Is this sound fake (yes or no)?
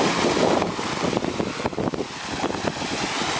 no